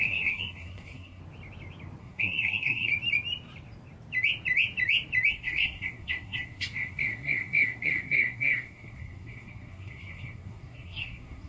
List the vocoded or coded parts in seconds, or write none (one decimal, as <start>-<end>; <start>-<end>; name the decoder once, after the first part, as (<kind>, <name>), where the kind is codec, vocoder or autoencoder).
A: 0.0-1.2 (codec, SNAC); 2.0-2.9; 5.3-11.5